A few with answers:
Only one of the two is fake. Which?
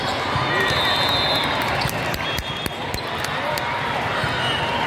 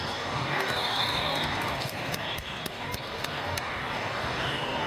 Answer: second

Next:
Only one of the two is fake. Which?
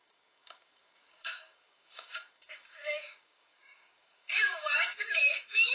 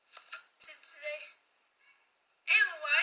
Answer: first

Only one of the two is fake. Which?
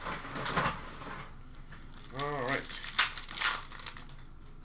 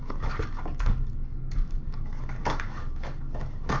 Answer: second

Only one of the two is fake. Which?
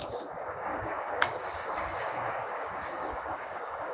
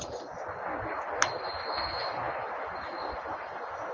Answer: first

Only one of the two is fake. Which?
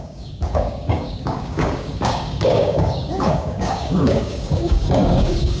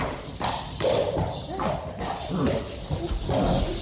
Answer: first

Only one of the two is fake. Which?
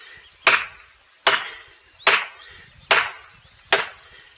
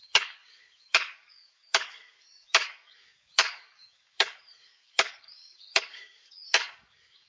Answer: second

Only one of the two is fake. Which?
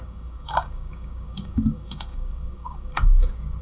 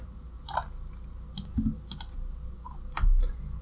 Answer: first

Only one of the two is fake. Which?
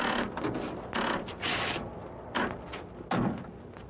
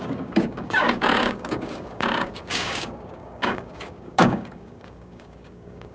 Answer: second